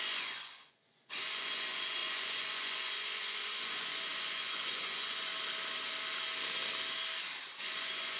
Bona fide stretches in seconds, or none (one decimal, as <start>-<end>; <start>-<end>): 5.3-7.6